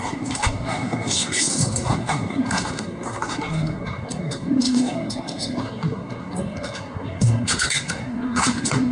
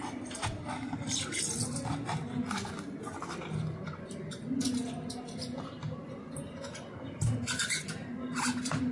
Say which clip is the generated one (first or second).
first